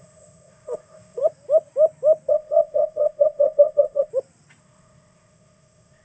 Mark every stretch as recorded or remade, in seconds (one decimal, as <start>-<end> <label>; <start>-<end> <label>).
0.0-1.2 remade; 1.2-2.3 recorded; 2.3-4.1 remade; 4.1-4.6 recorded; 4.6-6.0 remade